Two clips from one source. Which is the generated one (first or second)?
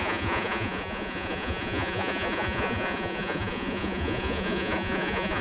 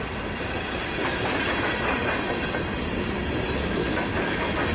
first